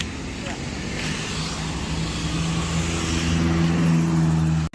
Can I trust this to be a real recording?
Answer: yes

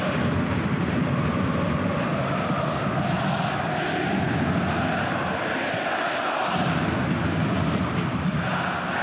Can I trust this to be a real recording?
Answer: yes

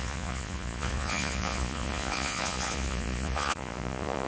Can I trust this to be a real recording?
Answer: no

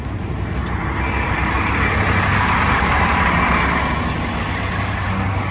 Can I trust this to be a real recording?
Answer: yes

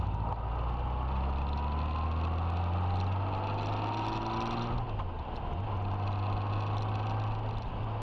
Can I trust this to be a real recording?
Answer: yes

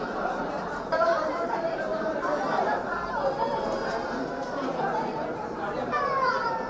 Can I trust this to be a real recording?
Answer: no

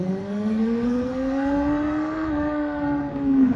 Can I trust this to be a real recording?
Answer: no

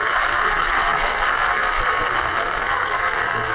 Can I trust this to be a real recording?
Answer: no